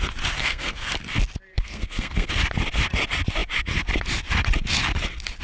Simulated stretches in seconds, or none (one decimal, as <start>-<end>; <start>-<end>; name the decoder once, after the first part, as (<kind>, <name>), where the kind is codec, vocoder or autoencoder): 0.4-0.9 (codec, SNAC); 1.5-2.3